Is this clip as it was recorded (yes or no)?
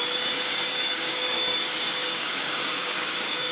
no